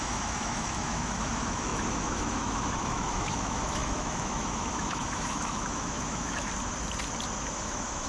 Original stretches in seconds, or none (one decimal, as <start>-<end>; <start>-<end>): 6.5-7.5